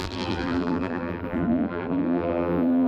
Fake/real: fake